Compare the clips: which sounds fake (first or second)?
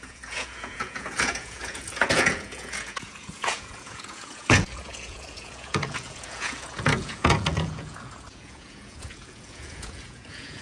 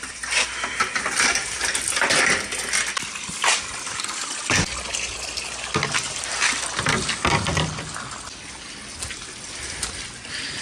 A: first